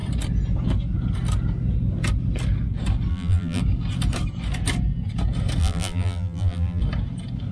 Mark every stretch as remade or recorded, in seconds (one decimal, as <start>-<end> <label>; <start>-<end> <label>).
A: 0.0-3.1 recorded; 3.1-3.6 remade; 3.6-5.6 recorded; 5.6-6.8 remade; 6.8-7.5 recorded